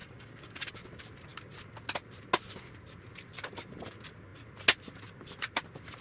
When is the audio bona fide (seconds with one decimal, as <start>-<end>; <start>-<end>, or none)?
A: 0.7-6.0